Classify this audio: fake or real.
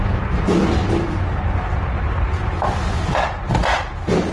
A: real